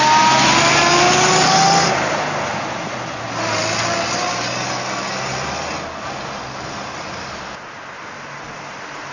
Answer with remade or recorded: recorded